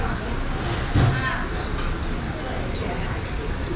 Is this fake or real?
real